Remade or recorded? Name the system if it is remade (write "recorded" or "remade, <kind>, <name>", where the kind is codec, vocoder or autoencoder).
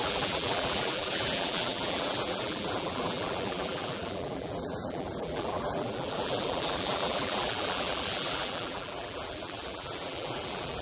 remade, vocoder, BigVGAN v2